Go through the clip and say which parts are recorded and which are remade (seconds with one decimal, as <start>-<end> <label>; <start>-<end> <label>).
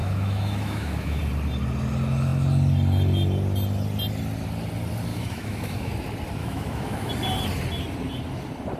0.0-1.2 remade; 1.2-5.1 recorded; 5.1-5.9 remade; 5.9-6.4 recorded; 6.4-7.1 remade; 7.1-8.8 recorded